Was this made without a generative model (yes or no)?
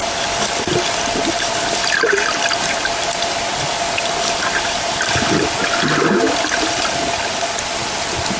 yes